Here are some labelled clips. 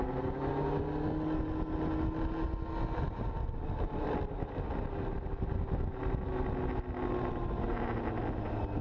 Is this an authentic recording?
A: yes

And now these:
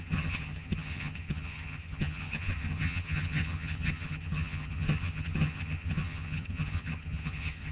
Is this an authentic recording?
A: no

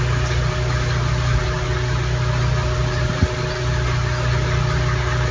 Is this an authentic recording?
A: yes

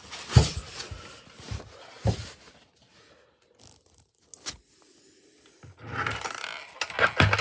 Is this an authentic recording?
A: yes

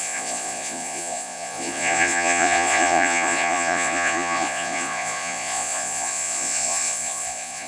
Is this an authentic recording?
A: no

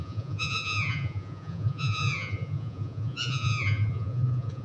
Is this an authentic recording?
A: no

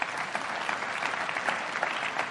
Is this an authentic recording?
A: yes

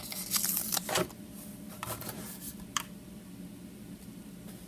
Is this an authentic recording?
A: yes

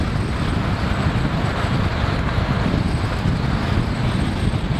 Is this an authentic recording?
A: yes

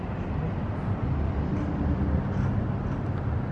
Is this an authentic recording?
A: yes